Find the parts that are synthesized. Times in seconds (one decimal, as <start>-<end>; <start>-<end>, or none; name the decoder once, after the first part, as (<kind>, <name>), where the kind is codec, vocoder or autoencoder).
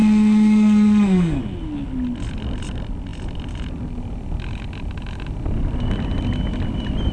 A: 0.0-1.4 (codec, SNAC)